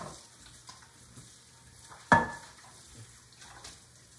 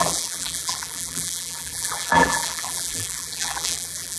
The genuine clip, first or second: first